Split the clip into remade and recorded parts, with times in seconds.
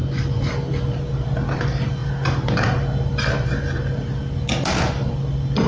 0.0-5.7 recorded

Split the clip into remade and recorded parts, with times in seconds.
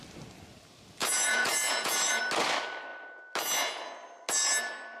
0.0-1.0 recorded; 1.0-2.2 remade; 2.2-5.0 recorded